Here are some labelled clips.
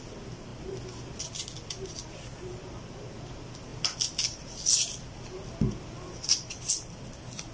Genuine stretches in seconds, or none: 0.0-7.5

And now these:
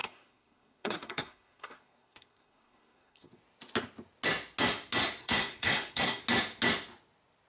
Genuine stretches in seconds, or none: 3.3-5.2; 6.2-7.5

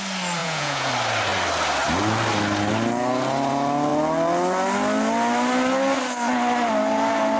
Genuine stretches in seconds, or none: 0.0-0.4; 0.9-7.4

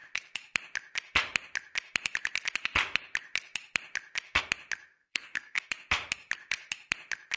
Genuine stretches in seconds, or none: 0.0-5.0; 5.6-7.4

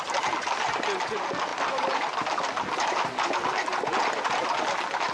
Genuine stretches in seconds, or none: 0.0-5.1